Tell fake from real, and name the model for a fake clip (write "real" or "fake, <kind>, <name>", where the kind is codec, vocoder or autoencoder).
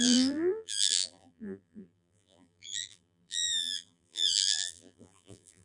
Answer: fake, vocoder, BigVGAN v2